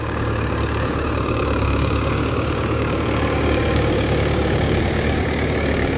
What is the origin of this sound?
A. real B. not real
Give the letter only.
B